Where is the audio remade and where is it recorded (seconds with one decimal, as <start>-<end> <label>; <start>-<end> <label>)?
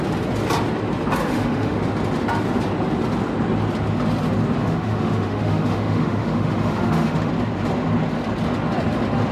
0.0-1.2 recorded; 1.2-1.9 remade; 1.9-4.6 recorded; 4.6-7.3 remade; 7.3-9.3 recorded